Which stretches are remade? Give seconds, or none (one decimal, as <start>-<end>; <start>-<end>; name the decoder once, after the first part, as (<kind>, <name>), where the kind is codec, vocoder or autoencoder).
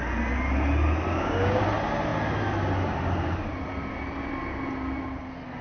1.1-1.7 (codec, DAC)